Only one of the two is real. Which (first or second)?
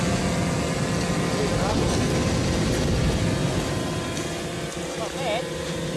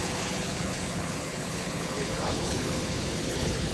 first